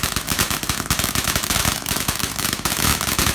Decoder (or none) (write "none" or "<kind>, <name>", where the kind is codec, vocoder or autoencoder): autoencoder, DAC-VAE